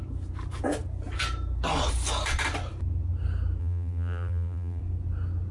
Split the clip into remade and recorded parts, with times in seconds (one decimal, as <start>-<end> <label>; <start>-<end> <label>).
0.0-3.6 recorded; 3.6-4.8 remade; 4.8-5.5 recorded